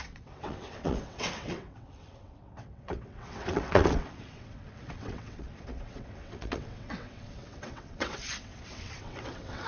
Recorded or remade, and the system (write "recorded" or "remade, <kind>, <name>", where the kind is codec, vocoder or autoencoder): remade, vocoder, WaveNeXt